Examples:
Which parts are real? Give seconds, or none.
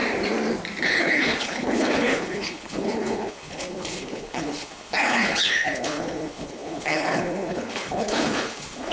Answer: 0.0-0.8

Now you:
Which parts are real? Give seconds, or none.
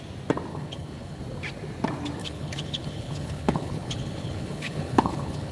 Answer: 0.0-0.5; 1.2-2.2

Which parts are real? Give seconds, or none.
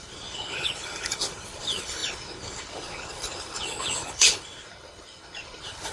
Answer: none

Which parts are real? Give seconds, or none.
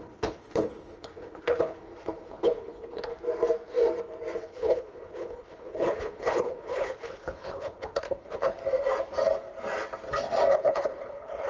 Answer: 3.1-4.4; 8.6-10.5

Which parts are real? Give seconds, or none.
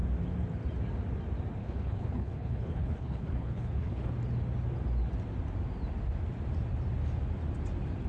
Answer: 0.0-1.6; 4.1-8.1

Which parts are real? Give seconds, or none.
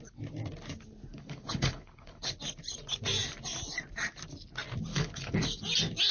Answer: 0.0-1.1; 2.3-4.9; 5.6-6.1